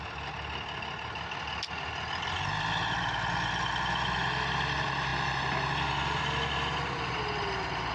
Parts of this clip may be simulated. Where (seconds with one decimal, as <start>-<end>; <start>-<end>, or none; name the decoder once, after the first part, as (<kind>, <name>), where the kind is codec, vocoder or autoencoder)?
none